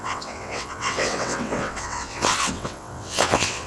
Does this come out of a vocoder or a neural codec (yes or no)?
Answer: yes